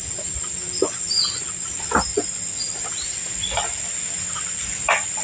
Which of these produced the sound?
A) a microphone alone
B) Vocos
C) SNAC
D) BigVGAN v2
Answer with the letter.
A